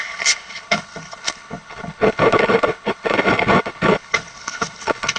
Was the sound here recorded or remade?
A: remade